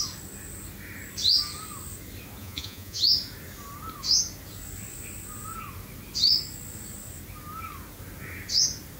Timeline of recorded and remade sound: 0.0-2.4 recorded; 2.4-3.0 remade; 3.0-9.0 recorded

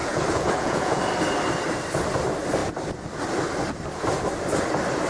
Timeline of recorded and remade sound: 0.0-1.0 remade; 1.0-5.1 recorded

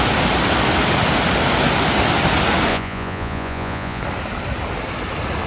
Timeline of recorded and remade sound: 0.0-2.7 recorded; 2.7-4.0 remade; 4.0-5.5 recorded